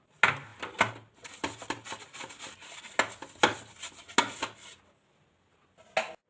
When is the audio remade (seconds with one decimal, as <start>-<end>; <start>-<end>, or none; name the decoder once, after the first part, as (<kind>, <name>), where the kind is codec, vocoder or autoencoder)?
none